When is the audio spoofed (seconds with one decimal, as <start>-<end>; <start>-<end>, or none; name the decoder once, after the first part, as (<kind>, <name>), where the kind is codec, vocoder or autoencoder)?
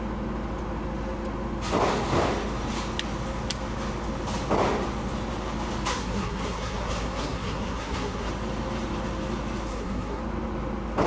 5.9-8.3 (codec, SNAC); 9.7-10.2